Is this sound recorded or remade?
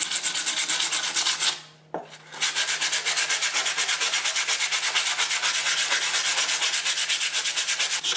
recorded